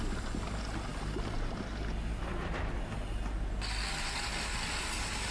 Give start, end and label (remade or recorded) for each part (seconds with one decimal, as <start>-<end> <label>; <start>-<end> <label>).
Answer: 0.0-5.3 recorded